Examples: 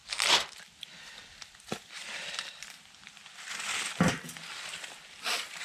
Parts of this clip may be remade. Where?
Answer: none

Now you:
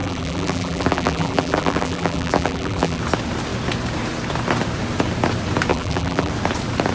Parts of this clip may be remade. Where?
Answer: 0.0-3.0 (vocoder, BigVGAN v2); 5.7-6.3

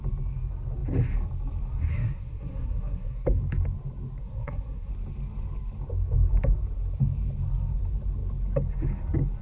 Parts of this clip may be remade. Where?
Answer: 1.9-3.4 (codec, SNAC); 4.2-4.9

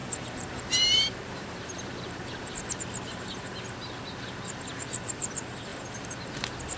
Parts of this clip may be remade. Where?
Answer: 0.0-2.6 (vocoder, BigVGAN v2)

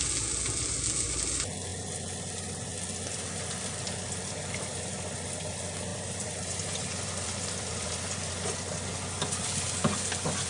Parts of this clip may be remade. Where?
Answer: 5.9-8.3 (vocoder, BigVGAN v2)

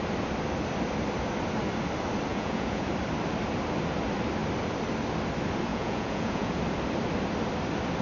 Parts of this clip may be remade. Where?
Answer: 2.3-2.9 (vocoder, Vocos); 5.7-6.6

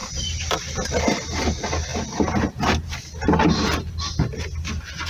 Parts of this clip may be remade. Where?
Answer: 0.0-0.9 (vocoder, BigVGAN v2); 1.9-5.1